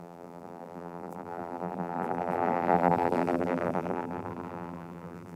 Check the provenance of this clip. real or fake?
fake